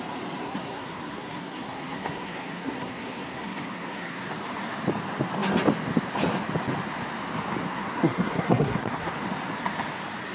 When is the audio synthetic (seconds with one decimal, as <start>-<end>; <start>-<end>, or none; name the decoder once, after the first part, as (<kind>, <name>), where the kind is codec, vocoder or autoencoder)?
0.4-4.2 (codec, SNAC); 7.6-9.1